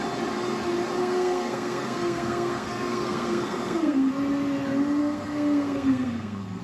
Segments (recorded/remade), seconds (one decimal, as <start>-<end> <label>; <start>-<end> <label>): 0.0-1.0 recorded; 1.0-4.1 remade; 4.1-5.0 recorded; 5.0-6.6 remade